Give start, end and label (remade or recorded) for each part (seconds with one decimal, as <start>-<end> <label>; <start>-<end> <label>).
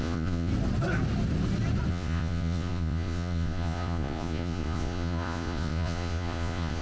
0.0-0.5 remade; 0.5-1.9 recorded; 1.9-6.8 remade